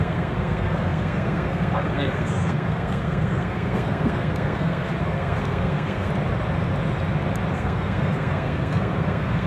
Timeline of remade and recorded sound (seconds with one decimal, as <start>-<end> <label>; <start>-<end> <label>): 0.0-6.1 remade; 6.1-7.5 recorded; 7.5-9.5 remade